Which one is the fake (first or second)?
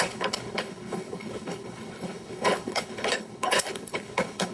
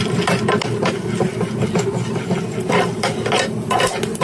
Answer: first